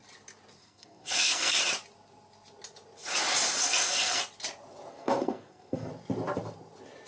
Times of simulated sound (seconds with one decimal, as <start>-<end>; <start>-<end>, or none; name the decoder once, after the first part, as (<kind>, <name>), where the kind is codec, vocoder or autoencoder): 0.6-1.6 (codec, SNAC); 3.6-4.2; 4.9-5.9